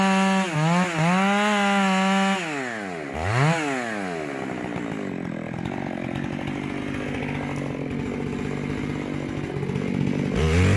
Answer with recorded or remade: recorded